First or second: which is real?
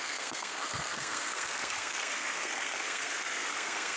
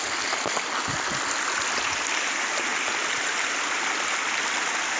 second